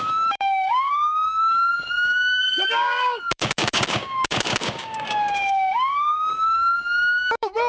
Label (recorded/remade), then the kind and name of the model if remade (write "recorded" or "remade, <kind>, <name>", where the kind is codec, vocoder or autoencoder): remade, codec, DAC